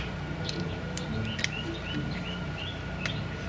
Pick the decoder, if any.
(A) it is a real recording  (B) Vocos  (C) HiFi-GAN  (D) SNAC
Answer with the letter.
A